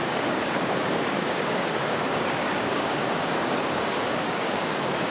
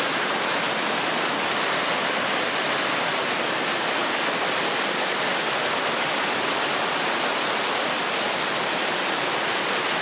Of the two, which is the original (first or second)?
second